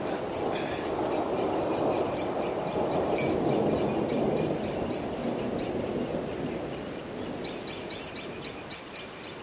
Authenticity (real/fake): real